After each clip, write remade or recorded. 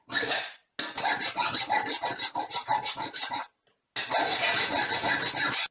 recorded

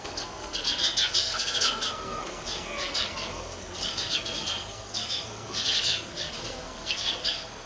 remade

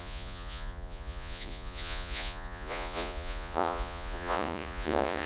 remade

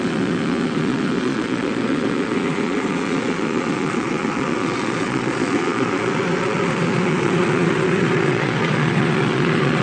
remade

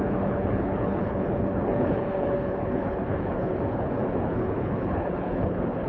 remade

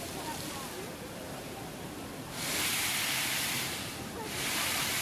recorded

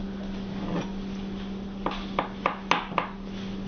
recorded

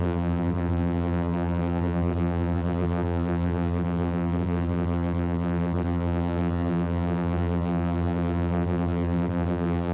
remade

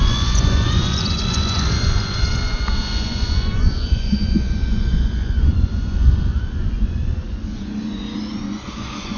remade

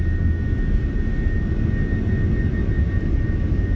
recorded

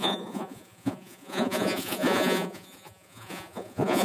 remade